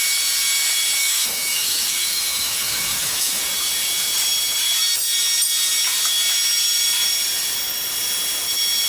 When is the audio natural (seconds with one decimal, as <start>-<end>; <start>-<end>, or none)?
0.0-1.0; 3.4-8.9